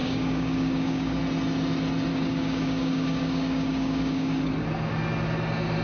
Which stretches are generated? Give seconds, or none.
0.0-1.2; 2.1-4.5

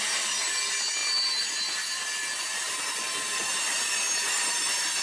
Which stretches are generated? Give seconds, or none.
none